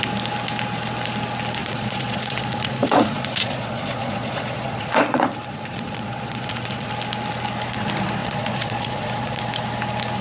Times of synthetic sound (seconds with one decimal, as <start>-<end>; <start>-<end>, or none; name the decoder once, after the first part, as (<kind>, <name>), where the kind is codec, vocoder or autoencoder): 1.6-6.9 (vocoder, Vocos); 8.2-9.4